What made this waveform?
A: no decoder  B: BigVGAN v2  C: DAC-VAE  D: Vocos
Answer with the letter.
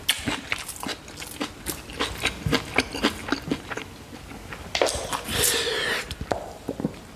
A